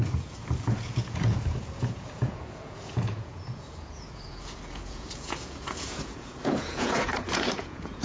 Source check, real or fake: fake